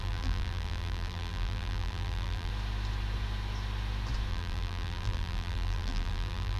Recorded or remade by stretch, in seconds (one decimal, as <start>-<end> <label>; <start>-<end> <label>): 0.0-2.5 remade; 2.5-4.3 recorded; 4.3-6.6 remade